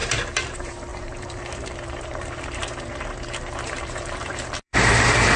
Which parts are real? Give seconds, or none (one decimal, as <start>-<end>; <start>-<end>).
0.0-0.5